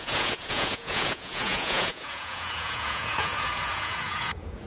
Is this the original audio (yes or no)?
no